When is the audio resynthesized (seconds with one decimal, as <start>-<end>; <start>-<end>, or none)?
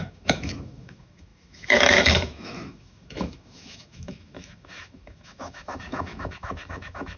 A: 0.0-7.2